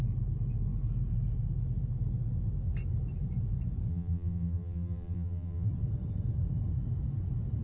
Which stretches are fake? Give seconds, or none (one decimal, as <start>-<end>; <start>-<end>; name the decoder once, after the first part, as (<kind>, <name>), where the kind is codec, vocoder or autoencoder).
3.9-5.7 (vocoder, BigVGAN v2)